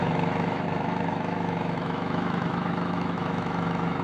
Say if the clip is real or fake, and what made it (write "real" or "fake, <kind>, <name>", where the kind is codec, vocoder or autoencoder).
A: fake, autoencoder, DAC-VAE